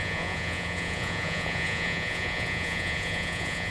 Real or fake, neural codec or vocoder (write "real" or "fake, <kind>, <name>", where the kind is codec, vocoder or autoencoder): fake, vocoder, Vocos